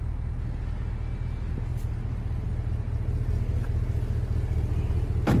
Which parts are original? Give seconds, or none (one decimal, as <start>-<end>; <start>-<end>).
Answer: 0.0-1.7; 4.9-5.4